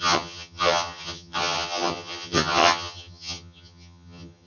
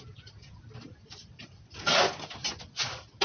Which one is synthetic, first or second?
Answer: first